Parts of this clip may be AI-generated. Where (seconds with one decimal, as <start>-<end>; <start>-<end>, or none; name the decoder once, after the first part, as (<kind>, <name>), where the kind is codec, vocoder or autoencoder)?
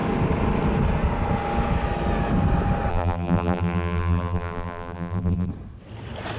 2.9-5.5 (vocoder, BigVGAN v2)